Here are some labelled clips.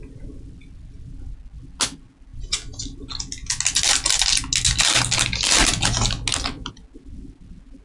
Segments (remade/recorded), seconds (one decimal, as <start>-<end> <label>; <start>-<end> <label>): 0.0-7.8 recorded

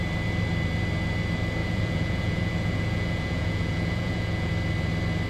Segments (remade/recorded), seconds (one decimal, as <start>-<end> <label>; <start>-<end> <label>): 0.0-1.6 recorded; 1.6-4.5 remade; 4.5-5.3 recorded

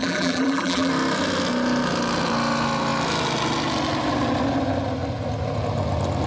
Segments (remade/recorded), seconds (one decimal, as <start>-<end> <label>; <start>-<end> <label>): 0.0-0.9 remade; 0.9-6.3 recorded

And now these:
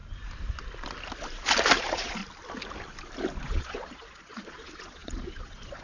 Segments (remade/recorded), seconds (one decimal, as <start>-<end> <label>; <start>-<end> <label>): 0.0-1.8 recorded; 1.8-2.2 remade; 2.2-3.4 recorded; 3.4-5.8 remade

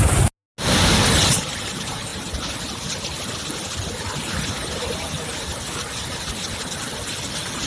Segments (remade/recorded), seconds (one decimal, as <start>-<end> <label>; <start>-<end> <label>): 0.0-7.7 recorded

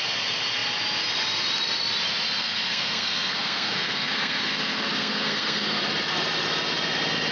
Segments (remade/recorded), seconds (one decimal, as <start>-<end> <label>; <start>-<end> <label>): 0.0-2.4 recorded; 2.4-5.8 remade; 5.8-7.3 recorded